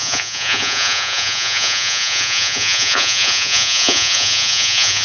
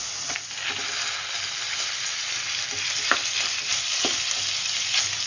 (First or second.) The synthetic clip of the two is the first